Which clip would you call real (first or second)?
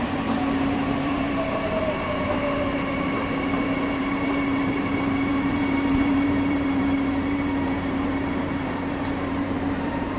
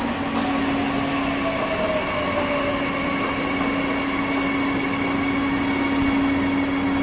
second